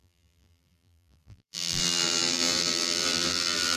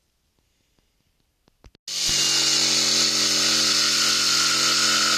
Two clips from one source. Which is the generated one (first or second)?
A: first